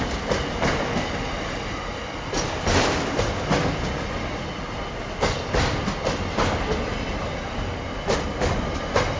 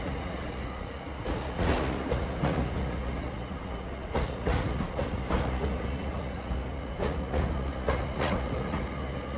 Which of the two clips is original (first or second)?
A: first